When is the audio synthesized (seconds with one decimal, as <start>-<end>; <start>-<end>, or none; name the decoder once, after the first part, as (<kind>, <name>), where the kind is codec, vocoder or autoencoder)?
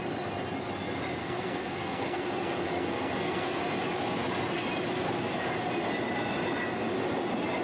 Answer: 1.2-3.6 (codec, SNAC)